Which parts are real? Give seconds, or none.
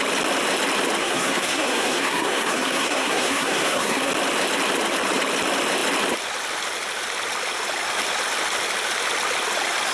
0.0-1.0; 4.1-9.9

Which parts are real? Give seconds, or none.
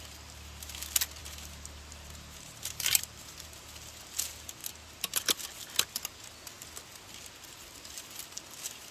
0.0-1.2; 3.0-8.9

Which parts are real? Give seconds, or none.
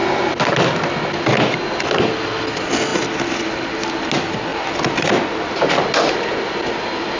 0.0-4.5; 5.8-7.2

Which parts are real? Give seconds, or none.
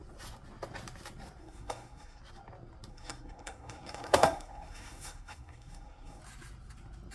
0.0-1.4; 2.2-2.9; 6.2-7.1